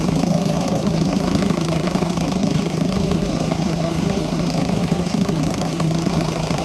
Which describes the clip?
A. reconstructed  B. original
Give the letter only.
A